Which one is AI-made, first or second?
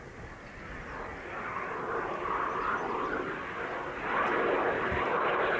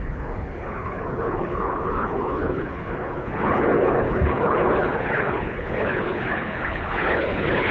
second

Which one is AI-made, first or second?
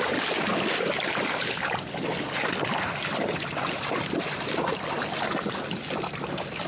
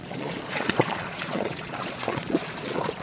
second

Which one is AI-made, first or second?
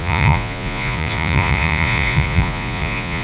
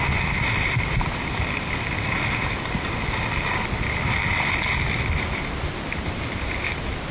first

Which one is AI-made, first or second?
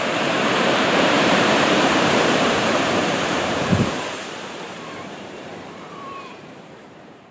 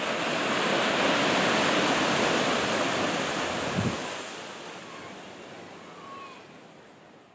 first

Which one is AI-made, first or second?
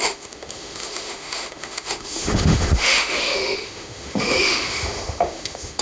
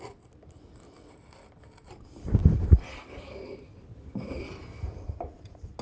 first